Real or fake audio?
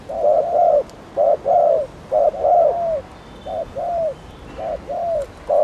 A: real